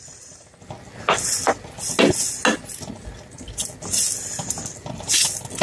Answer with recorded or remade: recorded